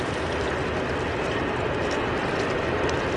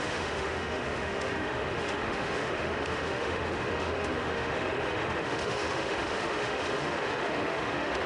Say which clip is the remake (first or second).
second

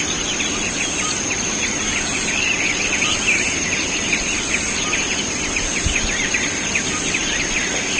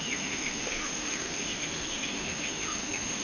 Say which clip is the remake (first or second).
second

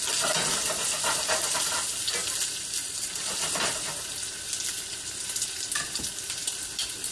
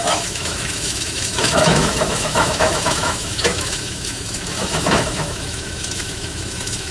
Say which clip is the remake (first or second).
second